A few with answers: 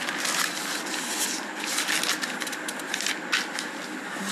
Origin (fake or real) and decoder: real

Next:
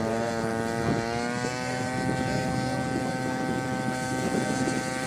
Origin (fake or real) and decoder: real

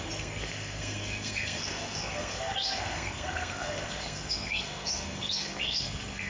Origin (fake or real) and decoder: fake, codec, SNAC